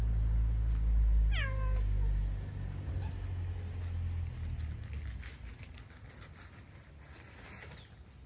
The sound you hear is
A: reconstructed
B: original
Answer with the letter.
B